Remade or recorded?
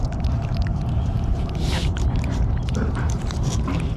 remade